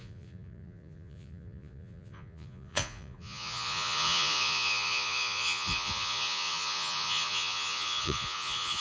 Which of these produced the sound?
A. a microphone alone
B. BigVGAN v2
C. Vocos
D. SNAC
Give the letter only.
C